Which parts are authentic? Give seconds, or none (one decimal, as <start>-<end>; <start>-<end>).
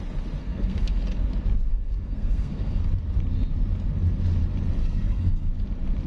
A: 0.0-0.4; 1.0-1.7; 2.8-4.8; 5.5-6.1